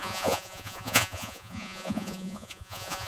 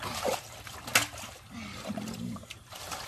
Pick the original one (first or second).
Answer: second